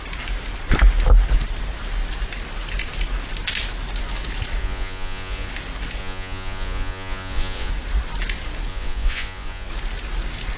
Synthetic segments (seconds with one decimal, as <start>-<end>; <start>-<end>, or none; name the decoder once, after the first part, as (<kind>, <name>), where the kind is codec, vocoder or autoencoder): 4.6-5.5 (vocoder, Vocos); 6.0-7.7; 8.7-9.7